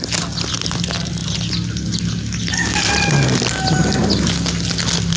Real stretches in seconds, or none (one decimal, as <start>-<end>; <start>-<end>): 0.0-5.2